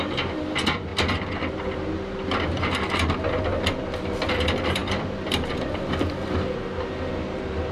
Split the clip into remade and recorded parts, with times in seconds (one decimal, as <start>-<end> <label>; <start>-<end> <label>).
0.0-4.8 recorded; 4.8-6.6 remade; 6.6-7.7 recorded